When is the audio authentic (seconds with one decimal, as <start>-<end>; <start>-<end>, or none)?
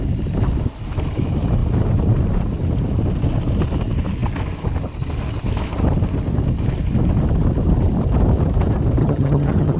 0.0-9.0